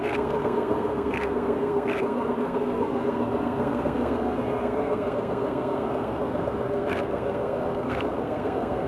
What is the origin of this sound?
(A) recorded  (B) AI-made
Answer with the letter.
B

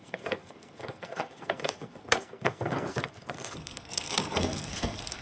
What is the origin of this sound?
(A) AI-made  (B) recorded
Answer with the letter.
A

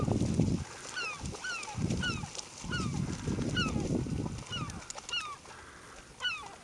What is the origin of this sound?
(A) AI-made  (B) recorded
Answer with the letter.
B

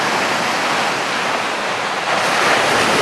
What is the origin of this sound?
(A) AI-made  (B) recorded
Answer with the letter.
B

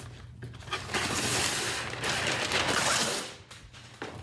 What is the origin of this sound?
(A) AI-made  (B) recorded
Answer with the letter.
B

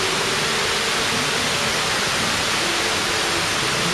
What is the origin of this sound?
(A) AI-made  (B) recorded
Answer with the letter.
B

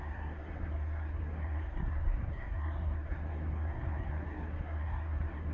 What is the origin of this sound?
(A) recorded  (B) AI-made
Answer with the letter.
B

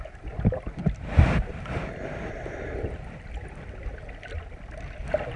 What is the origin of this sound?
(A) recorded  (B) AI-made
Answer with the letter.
A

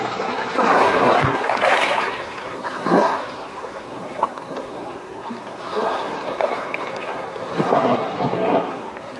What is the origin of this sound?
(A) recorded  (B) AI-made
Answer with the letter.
B